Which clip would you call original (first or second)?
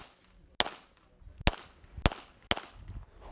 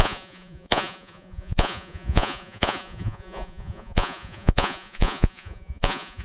first